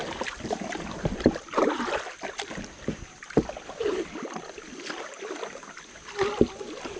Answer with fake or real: real